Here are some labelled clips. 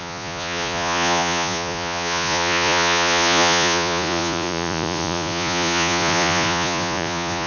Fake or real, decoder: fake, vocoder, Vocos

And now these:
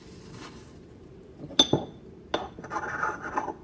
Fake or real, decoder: real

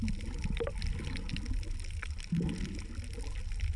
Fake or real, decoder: real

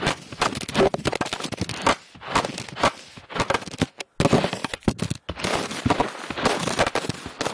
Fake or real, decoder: real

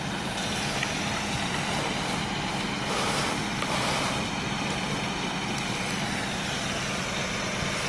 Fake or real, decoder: real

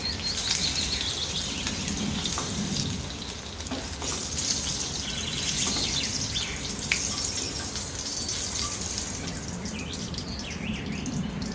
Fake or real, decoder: real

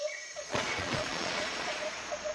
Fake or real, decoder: fake, vocoder, Vocos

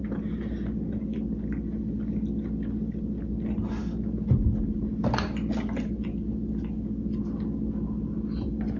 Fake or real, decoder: real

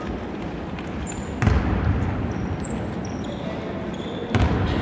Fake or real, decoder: real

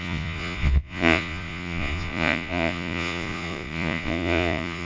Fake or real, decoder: fake, vocoder, Vocos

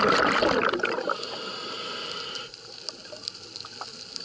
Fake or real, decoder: real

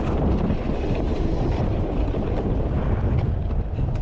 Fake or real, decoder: real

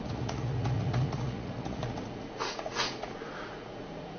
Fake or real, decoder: fake, vocoder, Vocos